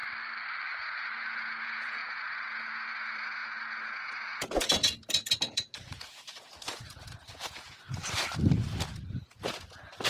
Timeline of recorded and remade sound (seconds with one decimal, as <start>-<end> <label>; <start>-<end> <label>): 0.0-0.7 recorded; 0.7-8.0 remade; 8.0-8.9 recorded; 8.9-10.1 remade